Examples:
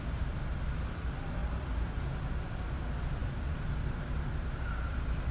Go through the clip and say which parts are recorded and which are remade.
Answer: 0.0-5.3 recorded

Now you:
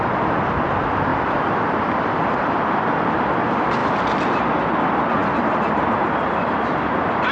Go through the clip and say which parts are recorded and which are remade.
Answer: 0.0-1.1 recorded; 1.1-3.4 remade; 3.4-3.8 recorded; 3.8-4.6 remade; 4.6-5.2 recorded; 5.2-7.3 remade

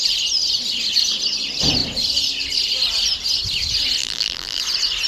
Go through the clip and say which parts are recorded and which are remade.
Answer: 0.0-4.0 recorded; 4.0-4.6 remade; 4.6-5.1 recorded

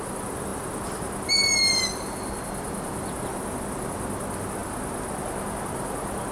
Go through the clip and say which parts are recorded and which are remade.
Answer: 0.0-6.3 recorded